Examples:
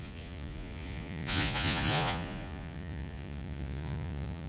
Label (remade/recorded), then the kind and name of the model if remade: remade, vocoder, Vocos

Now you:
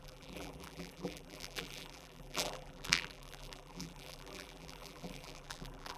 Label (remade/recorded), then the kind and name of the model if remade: remade, vocoder, BigVGAN v2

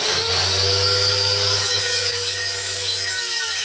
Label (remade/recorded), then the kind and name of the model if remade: remade, codec, DAC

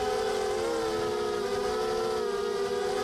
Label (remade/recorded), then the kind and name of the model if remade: recorded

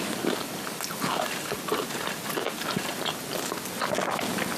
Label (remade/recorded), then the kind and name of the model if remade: recorded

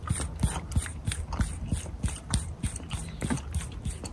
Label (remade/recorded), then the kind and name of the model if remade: recorded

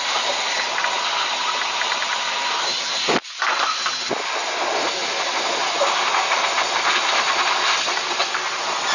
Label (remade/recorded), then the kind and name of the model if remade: recorded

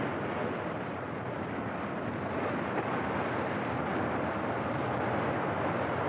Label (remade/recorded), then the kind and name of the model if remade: recorded